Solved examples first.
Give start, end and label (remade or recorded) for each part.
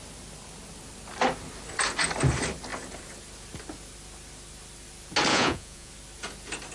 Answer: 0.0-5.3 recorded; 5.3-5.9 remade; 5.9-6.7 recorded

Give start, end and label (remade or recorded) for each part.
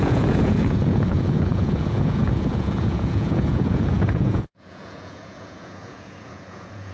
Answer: 0.0-6.9 remade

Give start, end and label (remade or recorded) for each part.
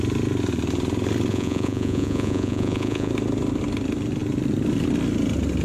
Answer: 0.0-1.3 recorded; 1.3-3.1 remade; 3.1-5.6 recorded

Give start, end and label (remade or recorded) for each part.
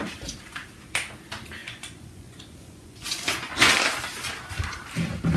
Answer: 0.0-1.6 recorded; 1.6-3.7 remade; 3.7-5.4 recorded